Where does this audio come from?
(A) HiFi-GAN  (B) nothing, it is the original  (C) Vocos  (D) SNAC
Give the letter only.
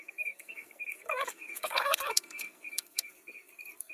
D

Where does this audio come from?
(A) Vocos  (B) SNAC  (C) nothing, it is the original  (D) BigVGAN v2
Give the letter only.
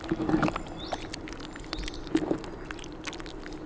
C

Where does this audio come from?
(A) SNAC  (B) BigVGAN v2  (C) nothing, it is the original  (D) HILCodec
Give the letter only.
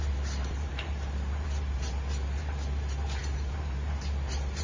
B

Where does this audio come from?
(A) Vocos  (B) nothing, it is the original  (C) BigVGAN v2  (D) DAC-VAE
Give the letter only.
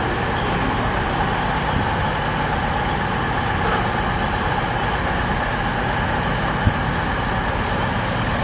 B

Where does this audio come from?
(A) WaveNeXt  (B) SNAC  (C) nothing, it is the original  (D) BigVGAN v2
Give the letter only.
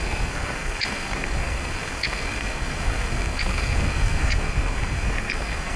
B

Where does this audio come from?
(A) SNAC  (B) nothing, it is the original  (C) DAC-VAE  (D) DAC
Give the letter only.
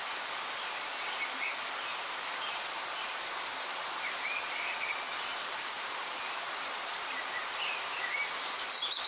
B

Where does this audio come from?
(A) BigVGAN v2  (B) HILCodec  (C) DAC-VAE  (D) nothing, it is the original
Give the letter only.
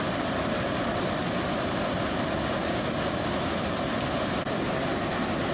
D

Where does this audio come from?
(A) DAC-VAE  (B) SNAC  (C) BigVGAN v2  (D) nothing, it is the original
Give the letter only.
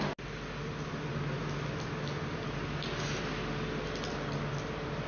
D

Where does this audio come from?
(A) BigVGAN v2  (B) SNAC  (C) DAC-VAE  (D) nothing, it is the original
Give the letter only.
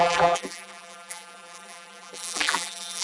A